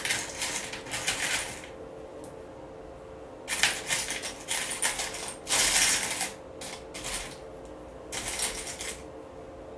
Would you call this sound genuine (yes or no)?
yes